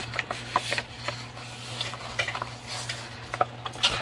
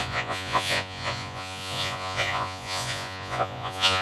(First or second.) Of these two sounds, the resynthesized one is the second